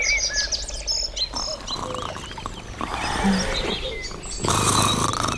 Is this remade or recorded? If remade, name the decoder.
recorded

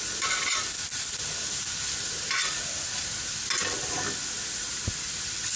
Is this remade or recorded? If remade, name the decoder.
recorded